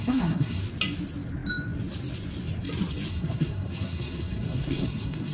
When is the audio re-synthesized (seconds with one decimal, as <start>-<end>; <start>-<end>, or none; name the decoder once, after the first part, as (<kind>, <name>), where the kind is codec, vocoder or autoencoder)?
0.0-0.6 (codec, SNAC); 3.1-5.3